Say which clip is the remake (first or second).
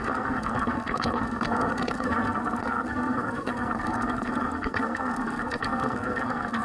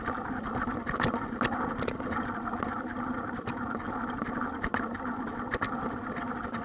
first